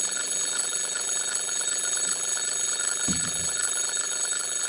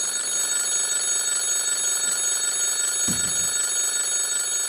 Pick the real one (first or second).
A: second